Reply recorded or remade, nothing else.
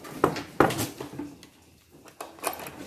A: recorded